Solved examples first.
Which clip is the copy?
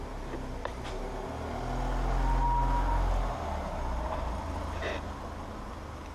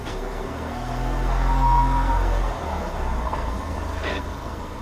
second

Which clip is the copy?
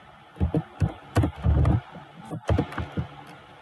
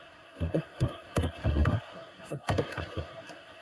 second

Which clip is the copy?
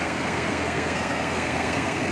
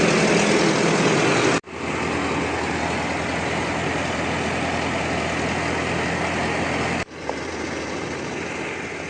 first